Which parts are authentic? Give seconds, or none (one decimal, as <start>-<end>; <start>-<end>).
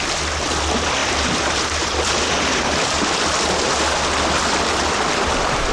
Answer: 0.0-1.0; 3.3-5.7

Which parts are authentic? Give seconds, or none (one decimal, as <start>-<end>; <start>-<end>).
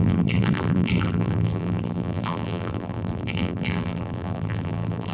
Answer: none